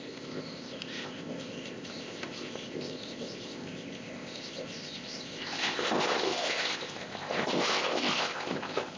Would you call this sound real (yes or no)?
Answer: no